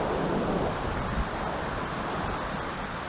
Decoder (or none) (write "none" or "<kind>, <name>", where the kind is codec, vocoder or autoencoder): none